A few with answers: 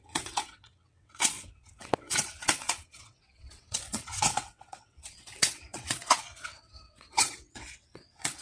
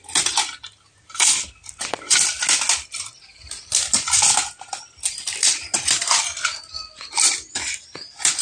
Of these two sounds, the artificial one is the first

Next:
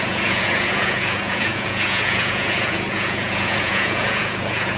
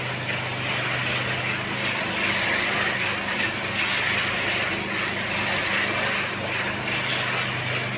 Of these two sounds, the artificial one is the first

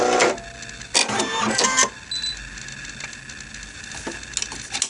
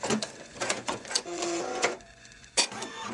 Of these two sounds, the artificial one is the second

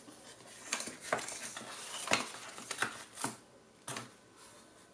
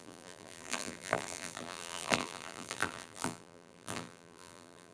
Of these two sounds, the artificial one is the second